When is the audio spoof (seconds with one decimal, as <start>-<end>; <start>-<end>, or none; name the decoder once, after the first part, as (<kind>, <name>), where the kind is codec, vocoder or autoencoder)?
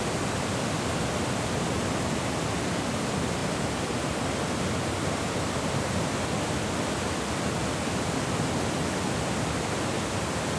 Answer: none